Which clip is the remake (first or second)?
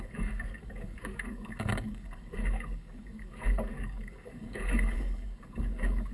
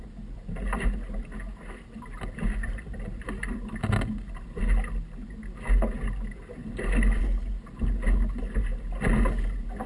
first